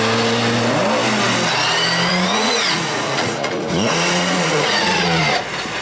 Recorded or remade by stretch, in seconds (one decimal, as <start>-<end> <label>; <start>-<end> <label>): 0.0-2.1 recorded; 2.1-5.2 remade; 5.2-5.8 recorded

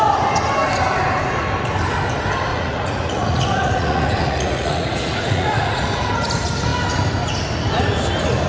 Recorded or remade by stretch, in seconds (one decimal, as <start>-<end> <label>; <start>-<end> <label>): 0.0-2.5 recorded; 2.5-6.1 remade; 6.1-8.5 recorded